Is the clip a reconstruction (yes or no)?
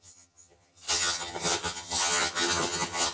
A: yes